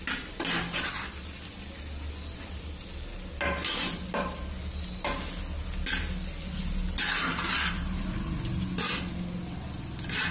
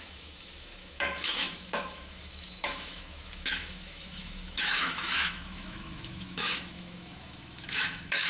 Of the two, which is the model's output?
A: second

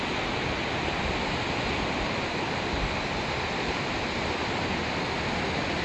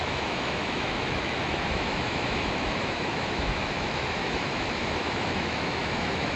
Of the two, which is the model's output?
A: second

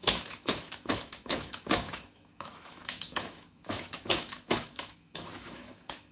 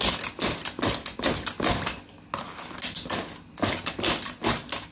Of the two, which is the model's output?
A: first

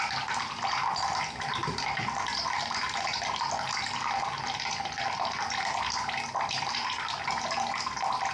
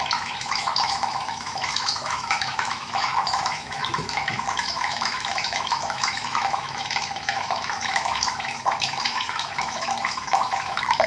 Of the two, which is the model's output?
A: second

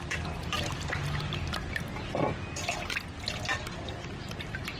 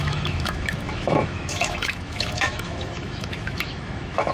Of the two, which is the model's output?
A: second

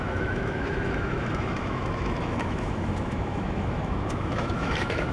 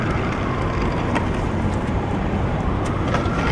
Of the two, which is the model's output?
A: first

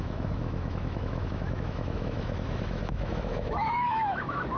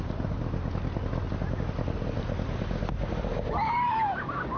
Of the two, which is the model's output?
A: first